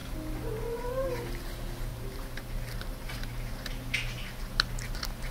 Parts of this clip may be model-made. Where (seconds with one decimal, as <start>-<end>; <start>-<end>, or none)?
1.9-3.5